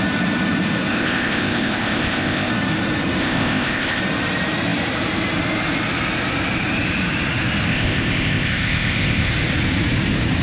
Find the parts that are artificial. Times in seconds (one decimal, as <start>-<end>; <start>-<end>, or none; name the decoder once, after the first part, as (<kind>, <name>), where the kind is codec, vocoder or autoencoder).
0.9-2.5 (codec, ZipCodec); 3.2-4.0; 7.7-9.3